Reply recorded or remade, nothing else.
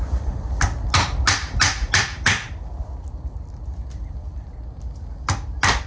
recorded